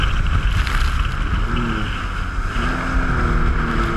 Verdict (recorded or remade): recorded